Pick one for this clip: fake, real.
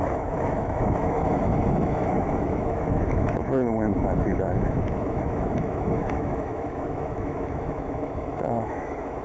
fake